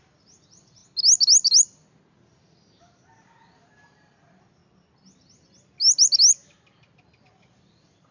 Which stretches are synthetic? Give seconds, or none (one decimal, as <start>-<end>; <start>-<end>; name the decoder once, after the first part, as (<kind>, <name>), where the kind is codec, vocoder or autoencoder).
0.0-0.8 (vocoder, BigVGAN v2); 2.8-4.6; 7.2-8.1